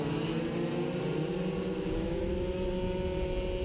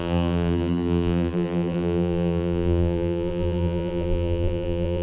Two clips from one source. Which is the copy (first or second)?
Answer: second